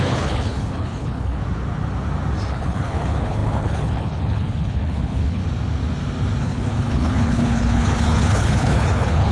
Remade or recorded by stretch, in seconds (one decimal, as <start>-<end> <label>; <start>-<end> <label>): 0.0-1.4 remade; 1.4-2.5 recorded; 2.5-5.4 remade; 5.4-6.4 recorded; 6.4-9.3 remade

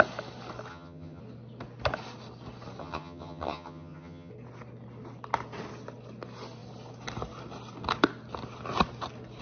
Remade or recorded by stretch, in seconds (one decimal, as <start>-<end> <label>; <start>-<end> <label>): 0.0-0.7 recorded; 0.7-1.2 remade; 1.2-2.8 recorded; 2.8-4.3 remade; 4.3-9.4 recorded

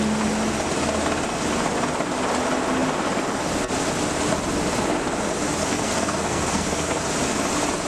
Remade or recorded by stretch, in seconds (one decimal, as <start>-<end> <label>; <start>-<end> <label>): 0.0-5.6 recorded; 5.6-7.0 remade; 7.0-7.9 recorded

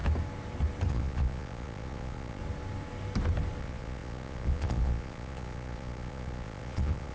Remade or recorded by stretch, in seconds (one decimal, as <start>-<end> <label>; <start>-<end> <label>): 0.0-0.9 recorded; 0.9-2.4 remade; 2.4-3.6 recorded; 3.6-7.1 remade